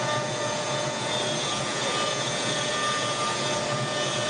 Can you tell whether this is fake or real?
fake